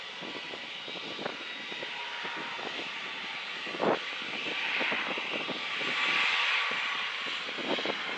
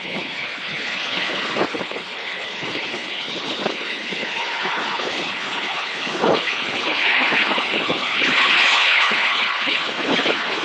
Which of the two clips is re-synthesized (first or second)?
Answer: second